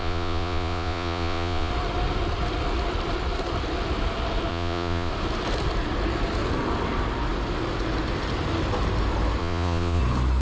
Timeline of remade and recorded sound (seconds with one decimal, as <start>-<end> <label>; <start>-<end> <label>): 0.0-1.7 remade; 1.7-4.5 recorded; 4.5-5.1 remade; 5.1-9.4 recorded; 9.4-10.0 remade; 10.0-10.4 recorded